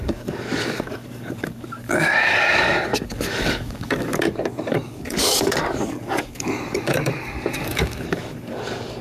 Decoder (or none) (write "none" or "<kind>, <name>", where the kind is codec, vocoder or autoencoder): codec, DAC